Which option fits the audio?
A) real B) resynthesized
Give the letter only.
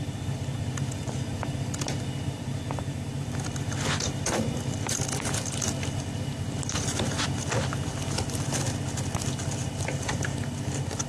A